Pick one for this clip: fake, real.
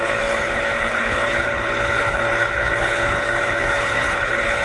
fake